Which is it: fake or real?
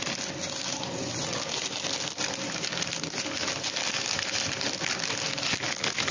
real